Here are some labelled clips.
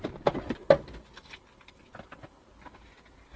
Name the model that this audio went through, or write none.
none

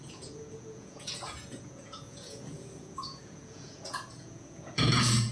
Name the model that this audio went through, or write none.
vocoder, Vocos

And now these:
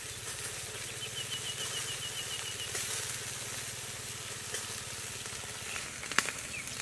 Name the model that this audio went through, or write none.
none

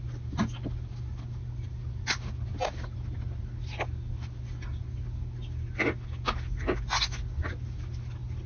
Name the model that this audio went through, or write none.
none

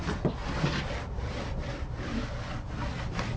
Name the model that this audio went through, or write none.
none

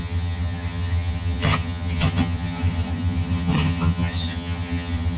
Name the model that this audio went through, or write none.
vocoder, HiFi-GAN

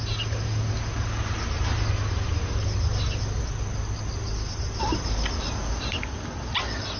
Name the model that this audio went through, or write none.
none